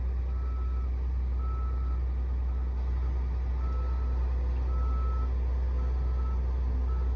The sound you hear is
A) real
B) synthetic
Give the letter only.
A